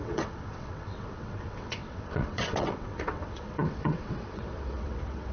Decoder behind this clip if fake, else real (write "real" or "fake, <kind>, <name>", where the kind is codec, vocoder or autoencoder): fake, vocoder, WaveNeXt